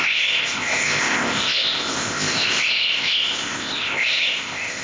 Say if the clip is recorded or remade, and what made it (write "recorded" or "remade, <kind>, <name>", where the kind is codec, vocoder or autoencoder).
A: remade, codec, ZipCodec